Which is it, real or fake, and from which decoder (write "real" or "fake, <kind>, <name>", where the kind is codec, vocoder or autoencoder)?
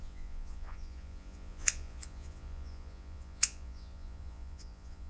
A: fake, vocoder, Vocos